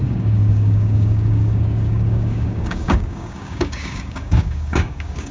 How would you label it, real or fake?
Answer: fake